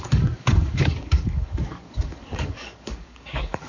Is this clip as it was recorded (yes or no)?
no